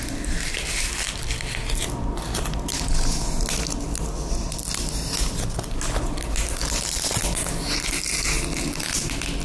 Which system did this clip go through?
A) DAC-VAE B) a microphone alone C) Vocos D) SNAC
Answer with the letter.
B